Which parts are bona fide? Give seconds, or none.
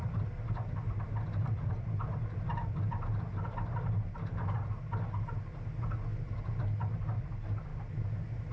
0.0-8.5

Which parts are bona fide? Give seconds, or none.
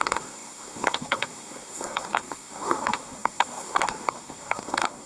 none